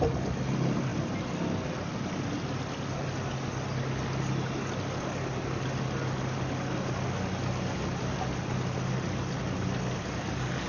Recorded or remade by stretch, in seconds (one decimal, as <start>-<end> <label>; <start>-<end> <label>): 0.0-10.7 recorded